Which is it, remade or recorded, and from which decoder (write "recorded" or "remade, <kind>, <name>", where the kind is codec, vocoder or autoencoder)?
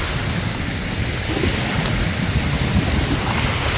recorded